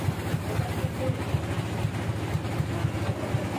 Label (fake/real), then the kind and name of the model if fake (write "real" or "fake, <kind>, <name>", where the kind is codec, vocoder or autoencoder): real